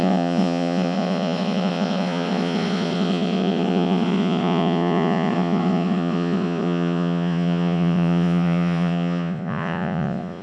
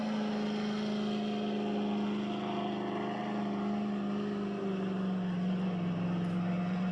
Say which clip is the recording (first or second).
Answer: second